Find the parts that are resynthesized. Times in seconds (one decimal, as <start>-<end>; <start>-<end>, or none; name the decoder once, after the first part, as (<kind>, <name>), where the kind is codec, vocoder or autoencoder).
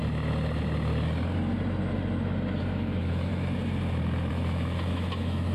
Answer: 2.6-3.3 (autoencoder, DAC-VAE); 4.3-5.5